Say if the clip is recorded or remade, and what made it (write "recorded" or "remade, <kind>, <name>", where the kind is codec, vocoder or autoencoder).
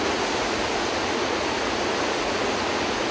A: remade, vocoder, Vocos